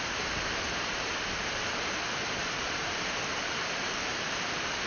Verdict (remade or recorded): remade